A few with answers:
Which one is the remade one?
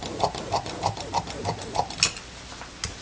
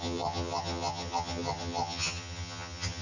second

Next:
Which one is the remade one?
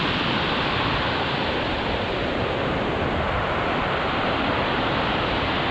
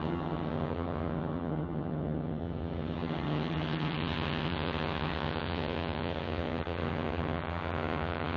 second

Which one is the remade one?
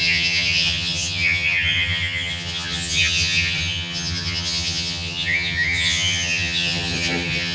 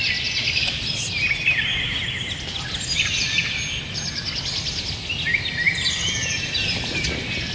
first